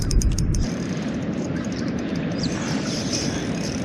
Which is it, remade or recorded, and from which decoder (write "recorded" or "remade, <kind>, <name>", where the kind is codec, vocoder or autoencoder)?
remade, vocoder, BigVGAN v2